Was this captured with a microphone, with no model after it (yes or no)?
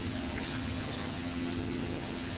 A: no